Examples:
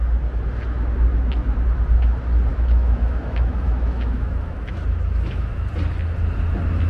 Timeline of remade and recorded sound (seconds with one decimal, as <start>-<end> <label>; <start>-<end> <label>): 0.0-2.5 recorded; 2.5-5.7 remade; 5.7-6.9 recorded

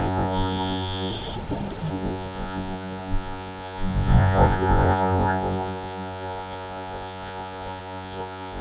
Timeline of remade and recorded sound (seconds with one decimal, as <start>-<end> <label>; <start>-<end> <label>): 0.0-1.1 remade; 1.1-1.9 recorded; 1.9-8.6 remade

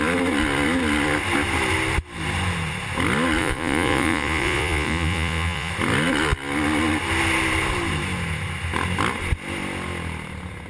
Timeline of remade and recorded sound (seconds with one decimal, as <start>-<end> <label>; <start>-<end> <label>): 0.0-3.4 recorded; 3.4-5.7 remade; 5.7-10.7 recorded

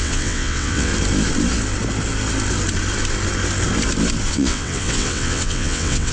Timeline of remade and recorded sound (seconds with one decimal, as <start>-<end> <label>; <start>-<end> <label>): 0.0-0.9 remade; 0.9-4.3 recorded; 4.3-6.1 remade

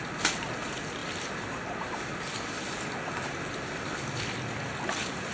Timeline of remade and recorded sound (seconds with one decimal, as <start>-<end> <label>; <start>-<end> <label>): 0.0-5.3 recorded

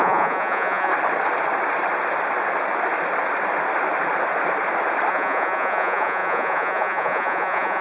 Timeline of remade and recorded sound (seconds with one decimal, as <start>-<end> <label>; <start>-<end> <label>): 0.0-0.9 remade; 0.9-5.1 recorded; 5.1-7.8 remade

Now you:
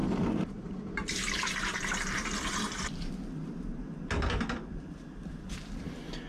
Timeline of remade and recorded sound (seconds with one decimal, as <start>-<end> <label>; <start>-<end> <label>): 0.0-3.1 remade; 3.1-6.3 recorded

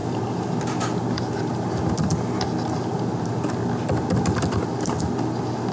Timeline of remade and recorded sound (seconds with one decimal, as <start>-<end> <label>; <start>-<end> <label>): 0.0-5.7 recorded